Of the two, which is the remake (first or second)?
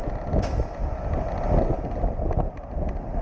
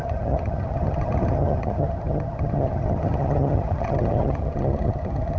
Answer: second